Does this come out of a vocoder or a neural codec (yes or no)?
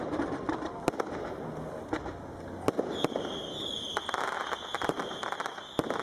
no